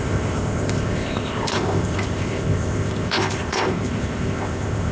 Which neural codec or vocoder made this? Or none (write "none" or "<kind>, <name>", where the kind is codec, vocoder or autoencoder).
codec, ZipCodec